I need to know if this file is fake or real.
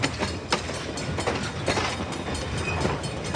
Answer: real